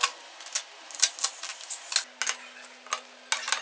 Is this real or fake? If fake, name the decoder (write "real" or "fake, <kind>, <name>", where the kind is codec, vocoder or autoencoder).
real